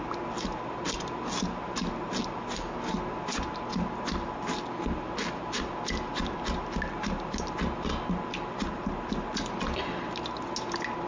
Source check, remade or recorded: recorded